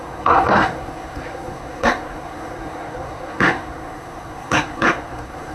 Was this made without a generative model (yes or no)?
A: no